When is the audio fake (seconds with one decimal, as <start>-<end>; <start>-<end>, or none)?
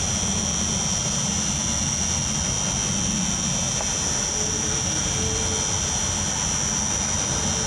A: none